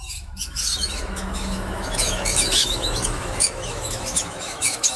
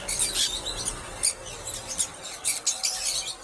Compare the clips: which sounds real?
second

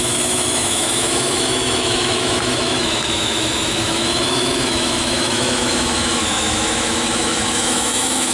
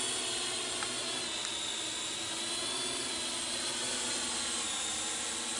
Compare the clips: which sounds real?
second